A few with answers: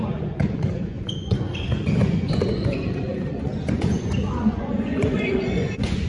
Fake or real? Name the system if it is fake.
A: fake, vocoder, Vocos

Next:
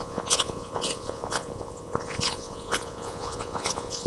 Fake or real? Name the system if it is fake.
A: fake, vocoder, Vocos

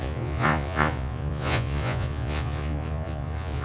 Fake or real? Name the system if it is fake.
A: fake, vocoder, Vocos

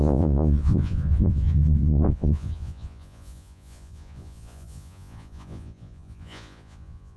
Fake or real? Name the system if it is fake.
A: fake, vocoder, Vocos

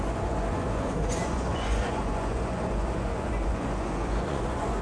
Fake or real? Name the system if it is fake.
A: fake, vocoder, Vocos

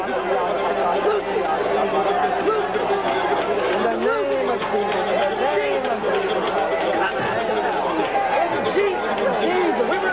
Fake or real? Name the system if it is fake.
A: real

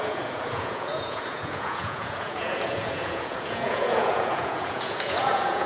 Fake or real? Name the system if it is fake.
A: fake, vocoder, Vocos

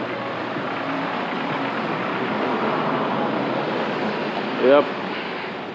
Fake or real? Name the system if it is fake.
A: real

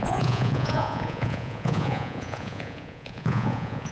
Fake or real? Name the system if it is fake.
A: fake, vocoder, Vocos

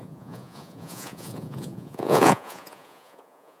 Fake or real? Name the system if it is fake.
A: fake, vocoder, Vocos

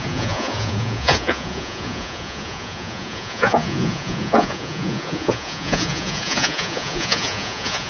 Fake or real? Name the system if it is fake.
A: fake, vocoder, Vocos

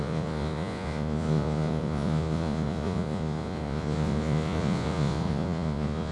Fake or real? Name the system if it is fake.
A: fake, vocoder, Vocos